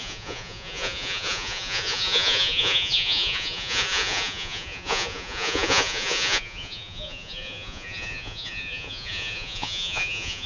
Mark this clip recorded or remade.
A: remade